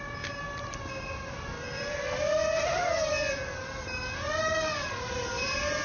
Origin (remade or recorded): recorded